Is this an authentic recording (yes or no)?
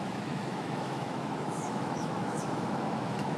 no